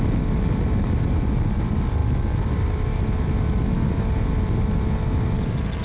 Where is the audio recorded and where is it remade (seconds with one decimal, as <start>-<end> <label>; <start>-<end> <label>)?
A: 0.0-5.8 recorded